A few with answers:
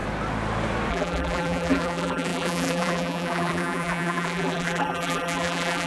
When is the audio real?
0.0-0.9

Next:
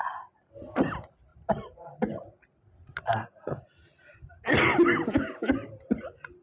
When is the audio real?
0.0-6.4